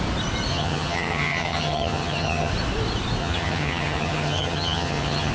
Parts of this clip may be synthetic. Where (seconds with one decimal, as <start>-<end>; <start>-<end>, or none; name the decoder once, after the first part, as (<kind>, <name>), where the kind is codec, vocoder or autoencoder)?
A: 0.5-2.5 (vocoder, HiFi-GAN); 3.2-5.3